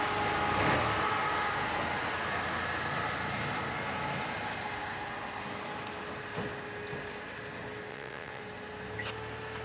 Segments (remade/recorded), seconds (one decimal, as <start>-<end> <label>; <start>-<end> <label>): 0.0-7.9 recorded; 7.9-8.4 remade; 8.4-9.6 recorded